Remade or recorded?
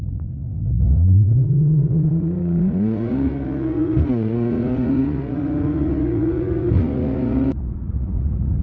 remade